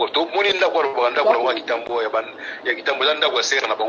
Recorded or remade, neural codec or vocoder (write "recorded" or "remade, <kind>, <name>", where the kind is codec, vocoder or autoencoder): recorded